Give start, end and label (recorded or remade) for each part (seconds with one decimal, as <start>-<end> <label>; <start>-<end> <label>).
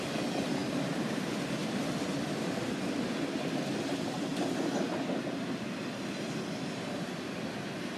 0.0-8.0 recorded